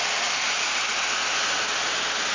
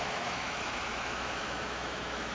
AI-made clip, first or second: second